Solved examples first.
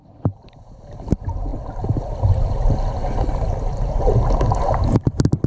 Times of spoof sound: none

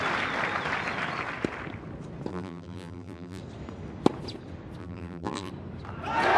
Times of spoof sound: 2.3-3.4 (vocoder, BigVGAN v2); 4.8-5.5

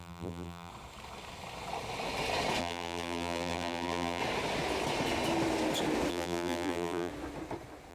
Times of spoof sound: 0.0-0.7 (vocoder, BigVGAN v2); 2.6-4.2; 6.1-7.1

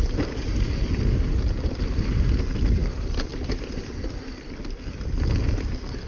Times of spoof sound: 2.8-3.5 (vocoder, BigVGAN v2)

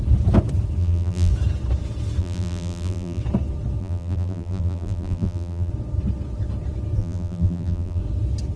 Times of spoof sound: 0.8-1.3 (vocoder, BigVGAN v2); 2.2-3.2; 3.8-5.7; 7.0-8.0